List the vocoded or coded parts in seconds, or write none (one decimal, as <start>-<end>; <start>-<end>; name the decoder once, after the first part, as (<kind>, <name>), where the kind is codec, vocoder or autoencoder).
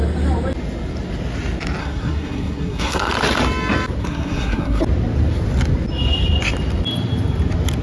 1.8-3.1 (codec, SNAC); 4.0-4.8